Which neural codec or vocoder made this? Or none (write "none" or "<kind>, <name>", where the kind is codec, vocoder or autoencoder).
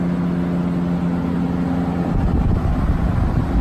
none